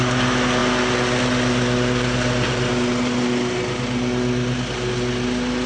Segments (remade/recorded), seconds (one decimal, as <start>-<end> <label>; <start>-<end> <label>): 0.0-5.7 recorded